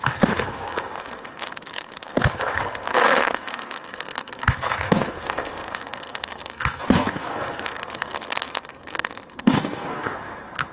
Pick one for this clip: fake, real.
fake